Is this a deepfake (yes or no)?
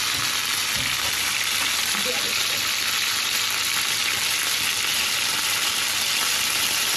no